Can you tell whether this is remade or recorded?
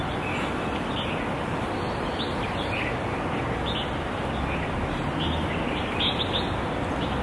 recorded